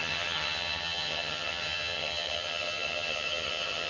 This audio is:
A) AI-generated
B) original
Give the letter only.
A